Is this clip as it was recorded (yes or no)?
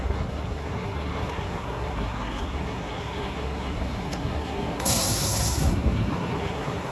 no